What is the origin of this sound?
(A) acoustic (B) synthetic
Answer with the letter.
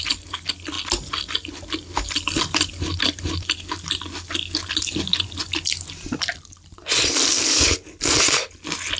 A